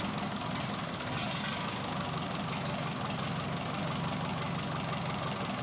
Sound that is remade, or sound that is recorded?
recorded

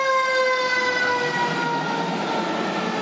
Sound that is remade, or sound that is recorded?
recorded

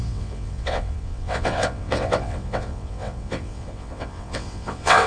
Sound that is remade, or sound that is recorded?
remade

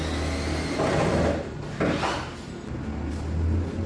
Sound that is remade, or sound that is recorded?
recorded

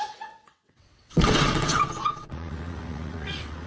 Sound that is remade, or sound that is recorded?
remade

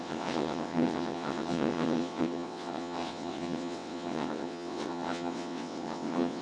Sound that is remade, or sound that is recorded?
remade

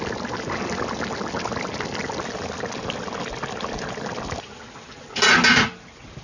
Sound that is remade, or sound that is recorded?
recorded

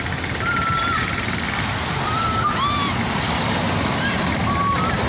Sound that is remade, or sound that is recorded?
recorded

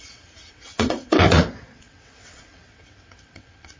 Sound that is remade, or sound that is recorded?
remade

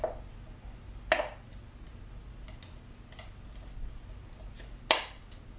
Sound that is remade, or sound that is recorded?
recorded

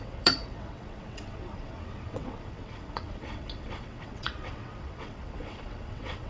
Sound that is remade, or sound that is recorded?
remade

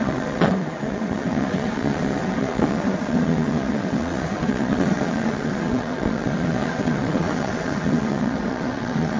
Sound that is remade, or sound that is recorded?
remade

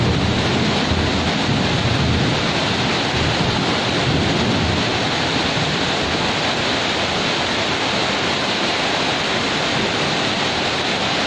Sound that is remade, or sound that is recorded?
recorded